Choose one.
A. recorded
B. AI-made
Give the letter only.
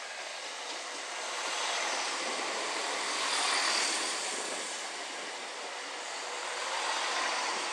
A